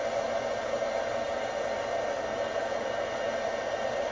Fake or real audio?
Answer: real